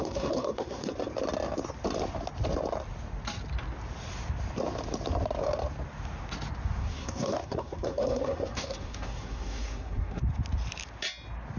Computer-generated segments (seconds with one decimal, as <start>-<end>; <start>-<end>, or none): 0.0-0.9; 6.8-10.2